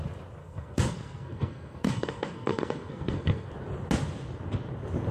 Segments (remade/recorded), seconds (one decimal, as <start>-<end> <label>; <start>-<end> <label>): 0.0-0.4 recorded; 0.4-3.5 remade; 3.5-5.1 recorded